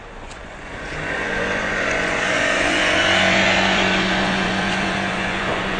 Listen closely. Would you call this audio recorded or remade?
remade